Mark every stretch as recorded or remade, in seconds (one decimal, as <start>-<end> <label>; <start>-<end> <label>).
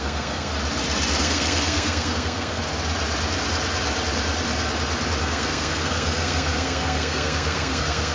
0.0-0.5 remade; 0.5-1.2 recorded; 1.2-2.6 remade; 2.6-5.2 recorded; 5.2-8.1 remade